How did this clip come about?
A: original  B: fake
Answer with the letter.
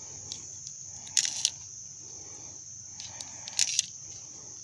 A